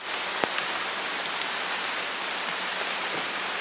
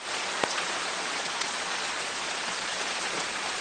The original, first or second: first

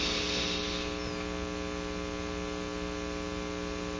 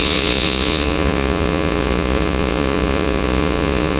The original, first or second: first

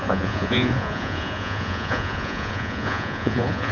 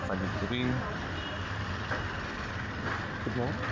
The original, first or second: second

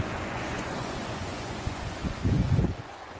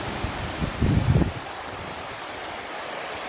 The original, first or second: second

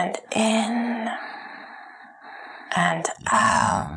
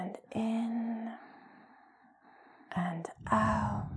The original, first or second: second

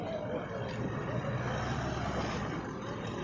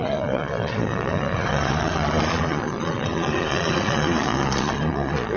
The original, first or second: first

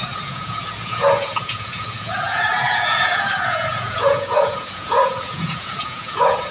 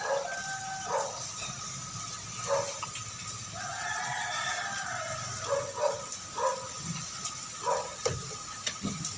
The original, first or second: second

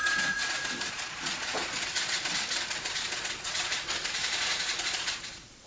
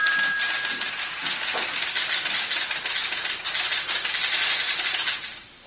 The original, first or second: second